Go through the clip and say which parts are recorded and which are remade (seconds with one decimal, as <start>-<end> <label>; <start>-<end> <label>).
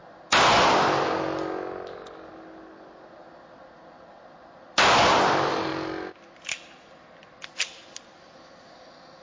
0.0-9.2 recorded